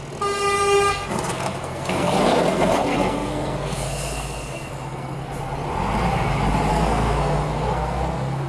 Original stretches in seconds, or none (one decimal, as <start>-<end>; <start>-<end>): 0.0-0.9; 5.3-6.7